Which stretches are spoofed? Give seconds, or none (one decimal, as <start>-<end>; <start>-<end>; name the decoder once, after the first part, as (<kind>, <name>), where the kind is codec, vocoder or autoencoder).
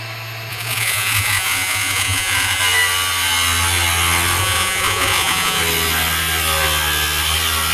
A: 0.5-2.6 (vocoder, Vocos); 4.4-5.6